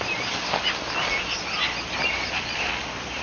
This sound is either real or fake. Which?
real